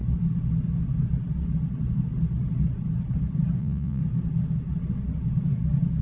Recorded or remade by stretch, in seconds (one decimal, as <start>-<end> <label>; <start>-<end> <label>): 0.0-3.6 recorded; 3.6-4.0 remade; 4.0-6.0 recorded